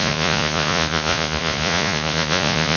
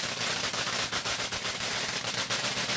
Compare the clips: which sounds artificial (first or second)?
first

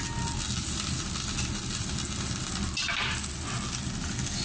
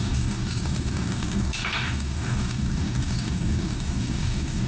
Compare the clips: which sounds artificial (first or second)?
second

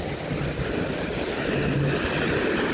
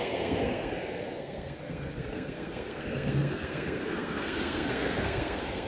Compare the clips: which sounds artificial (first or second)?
second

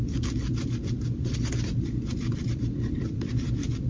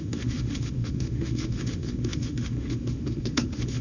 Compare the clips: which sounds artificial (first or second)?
second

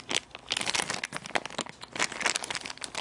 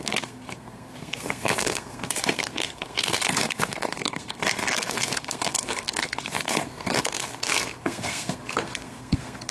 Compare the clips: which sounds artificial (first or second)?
second